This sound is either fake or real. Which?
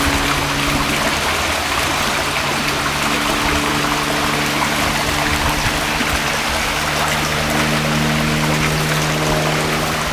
real